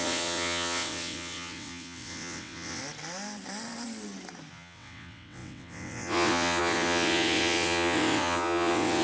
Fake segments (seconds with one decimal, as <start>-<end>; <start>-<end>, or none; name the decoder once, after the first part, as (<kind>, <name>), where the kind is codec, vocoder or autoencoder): 0.0-2.8 (vocoder, WaveNeXt); 4.5-9.0